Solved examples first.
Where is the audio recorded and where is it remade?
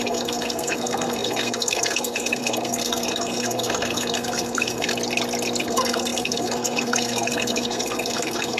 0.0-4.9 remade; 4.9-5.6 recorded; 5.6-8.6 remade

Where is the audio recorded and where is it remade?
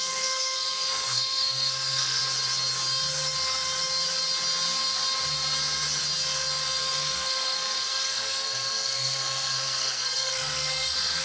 0.0-2.2 remade; 2.2-6.8 recorded; 6.8-11.2 remade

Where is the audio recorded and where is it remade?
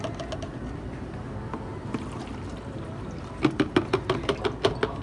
0.0-5.0 recorded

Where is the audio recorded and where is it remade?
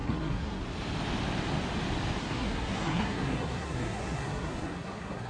0.0-0.6 remade; 0.6-2.2 recorded; 2.2-5.3 remade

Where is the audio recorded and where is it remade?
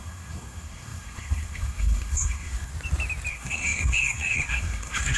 0.0-2.7 remade; 2.7-3.3 recorded; 3.3-5.2 remade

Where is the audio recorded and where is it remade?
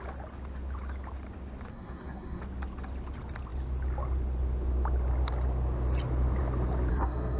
0.0-1.7 recorded; 1.7-2.4 remade; 2.4-6.9 recorded; 6.9-7.4 remade